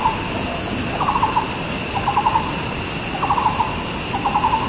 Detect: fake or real real